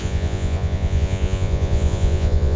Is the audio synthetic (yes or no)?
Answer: yes